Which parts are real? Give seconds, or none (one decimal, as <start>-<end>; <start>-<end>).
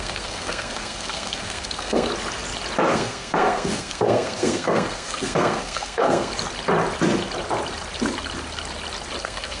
2.1-2.9; 6.3-9.2